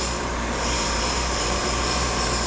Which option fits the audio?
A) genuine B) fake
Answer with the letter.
B